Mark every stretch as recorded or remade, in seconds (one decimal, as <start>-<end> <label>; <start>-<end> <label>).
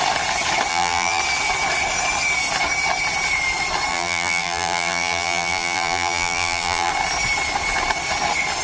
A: 0.0-0.7 recorded; 0.7-1.2 remade; 1.2-3.9 recorded; 3.9-6.9 remade; 6.9-8.6 recorded